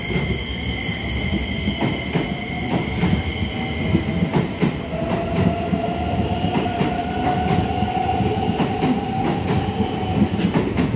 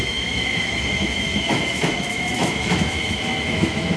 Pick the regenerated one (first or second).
second